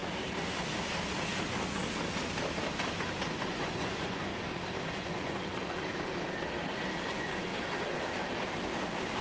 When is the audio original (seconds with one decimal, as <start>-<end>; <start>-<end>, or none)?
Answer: 0.0-3.4; 4.3-4.9; 5.5-7.1; 7.5-9.2